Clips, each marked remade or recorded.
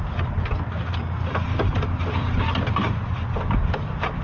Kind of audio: recorded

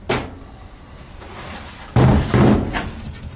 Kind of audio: recorded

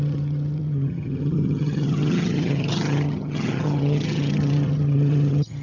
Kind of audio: remade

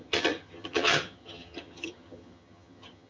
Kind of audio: remade